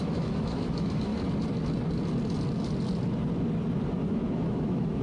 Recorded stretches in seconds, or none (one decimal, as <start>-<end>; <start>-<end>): 1.1-4.1